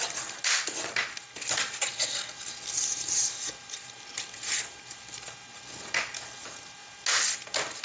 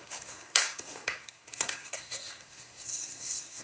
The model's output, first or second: second